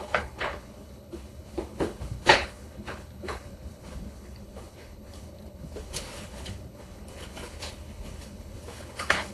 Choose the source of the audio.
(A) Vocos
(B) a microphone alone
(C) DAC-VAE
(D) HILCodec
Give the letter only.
D